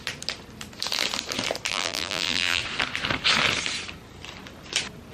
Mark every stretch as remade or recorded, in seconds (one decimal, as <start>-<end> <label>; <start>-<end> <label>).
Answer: 0.0-1.7 recorded; 1.7-2.6 remade; 2.6-5.1 recorded